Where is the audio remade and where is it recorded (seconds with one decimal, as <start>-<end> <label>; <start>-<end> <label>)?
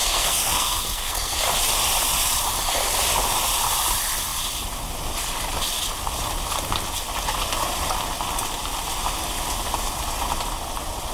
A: 0.0-1.4 remade; 1.4-11.1 recorded